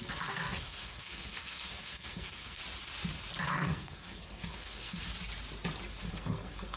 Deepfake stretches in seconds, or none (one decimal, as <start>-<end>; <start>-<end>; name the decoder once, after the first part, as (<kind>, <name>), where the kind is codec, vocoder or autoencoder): 0.0-2.6 (codec, SNAC); 3.4-5.1; 6.1-6.8